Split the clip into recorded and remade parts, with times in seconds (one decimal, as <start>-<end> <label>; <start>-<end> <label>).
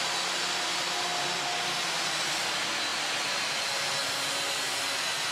0.0-5.3 recorded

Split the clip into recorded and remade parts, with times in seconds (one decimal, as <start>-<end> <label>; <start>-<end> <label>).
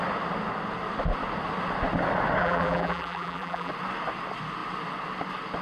0.0-2.4 recorded; 2.4-3.7 remade; 3.7-5.6 recorded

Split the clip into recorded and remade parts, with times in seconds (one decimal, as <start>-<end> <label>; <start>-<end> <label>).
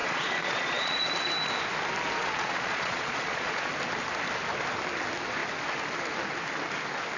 0.0-1.1 remade; 1.1-2.2 recorded; 2.2-3.7 remade; 3.7-7.2 recorded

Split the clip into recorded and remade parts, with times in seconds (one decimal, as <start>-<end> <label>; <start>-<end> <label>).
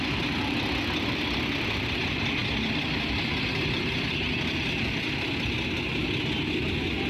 0.0-7.1 recorded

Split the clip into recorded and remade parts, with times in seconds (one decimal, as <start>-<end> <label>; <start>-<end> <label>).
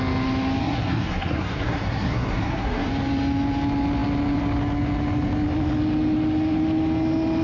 0.0-0.6 recorded; 0.6-2.9 remade; 2.9-7.4 recorded